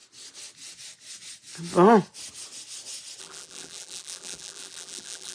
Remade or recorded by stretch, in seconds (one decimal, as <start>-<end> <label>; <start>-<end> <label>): 0.0-3.2 recorded; 3.2-5.3 remade